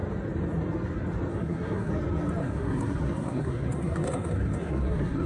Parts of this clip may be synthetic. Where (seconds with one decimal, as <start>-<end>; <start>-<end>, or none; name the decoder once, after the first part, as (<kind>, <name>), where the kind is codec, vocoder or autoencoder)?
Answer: 1.3-1.9 (codec, SNAC); 2.4-5.3